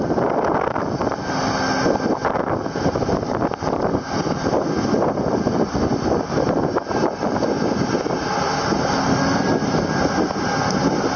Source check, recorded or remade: recorded